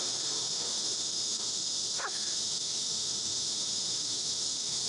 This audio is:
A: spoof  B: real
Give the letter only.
A